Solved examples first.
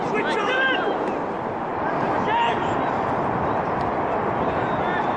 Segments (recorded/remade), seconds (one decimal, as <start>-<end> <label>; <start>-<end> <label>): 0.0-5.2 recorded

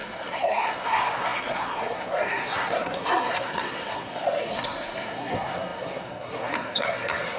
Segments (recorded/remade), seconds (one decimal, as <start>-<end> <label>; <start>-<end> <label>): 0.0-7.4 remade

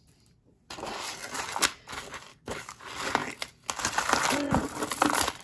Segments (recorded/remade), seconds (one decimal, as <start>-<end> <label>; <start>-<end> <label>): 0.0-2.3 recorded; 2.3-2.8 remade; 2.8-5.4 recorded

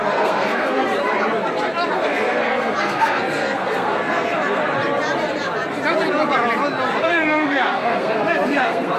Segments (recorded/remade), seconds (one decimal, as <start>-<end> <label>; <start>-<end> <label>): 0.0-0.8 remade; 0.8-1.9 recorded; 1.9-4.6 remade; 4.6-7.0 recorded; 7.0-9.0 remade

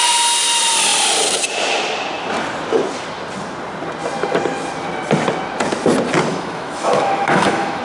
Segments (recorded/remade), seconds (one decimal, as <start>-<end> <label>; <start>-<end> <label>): 0.0-6.3 recorded; 6.3-7.8 remade

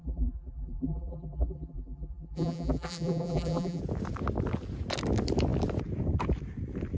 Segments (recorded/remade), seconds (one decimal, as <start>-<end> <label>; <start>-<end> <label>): 0.0-3.8 remade; 3.8-7.0 recorded

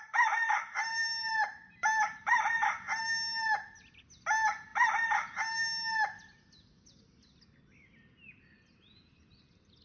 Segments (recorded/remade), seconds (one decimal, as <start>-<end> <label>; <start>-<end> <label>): 0.0-0.8 recorded; 0.8-3.0 remade; 3.0-9.8 recorded

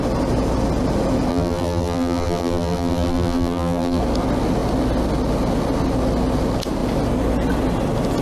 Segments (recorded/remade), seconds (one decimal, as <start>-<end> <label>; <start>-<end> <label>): 0.0-1.3 recorded; 1.3-4.0 remade; 4.0-8.2 recorded